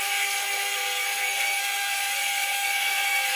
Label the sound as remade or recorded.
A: remade